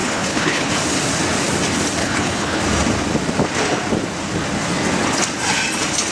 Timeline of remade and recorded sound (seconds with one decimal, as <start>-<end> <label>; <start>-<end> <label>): 0.0-0.7 remade; 0.7-2.0 recorded; 2.0-2.6 remade; 2.6-6.1 recorded